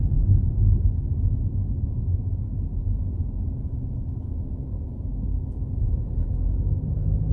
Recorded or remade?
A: recorded